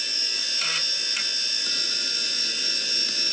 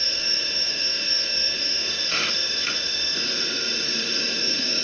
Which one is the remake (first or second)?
second